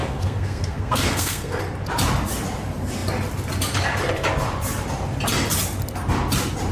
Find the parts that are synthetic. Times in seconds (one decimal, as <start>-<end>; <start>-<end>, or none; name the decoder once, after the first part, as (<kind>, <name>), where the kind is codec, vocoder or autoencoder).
0.0-1.6 (codec, SNAC)

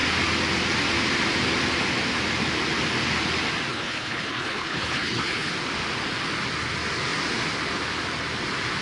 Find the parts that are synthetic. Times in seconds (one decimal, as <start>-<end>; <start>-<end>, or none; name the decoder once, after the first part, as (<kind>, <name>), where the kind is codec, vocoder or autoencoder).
3.7-5.5 (codec, HILCodec)

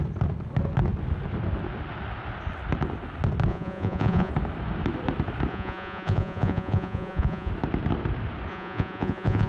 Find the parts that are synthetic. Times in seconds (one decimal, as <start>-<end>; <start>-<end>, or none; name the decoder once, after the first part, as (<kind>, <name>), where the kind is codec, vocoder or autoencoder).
3.5-4.3 (vocoder, Vocos); 5.5-7.5; 8.5-9.5